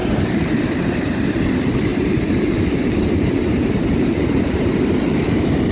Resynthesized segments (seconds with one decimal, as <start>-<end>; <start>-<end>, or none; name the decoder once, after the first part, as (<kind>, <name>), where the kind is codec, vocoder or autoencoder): 0.0-0.9 (vocoder, BigVGAN v2); 1.9-4.6